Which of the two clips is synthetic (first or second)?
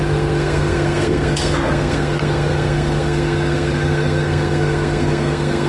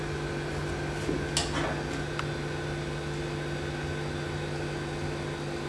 first